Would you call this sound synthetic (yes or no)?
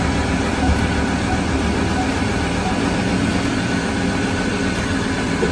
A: no